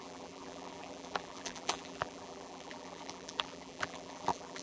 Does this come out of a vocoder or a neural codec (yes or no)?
yes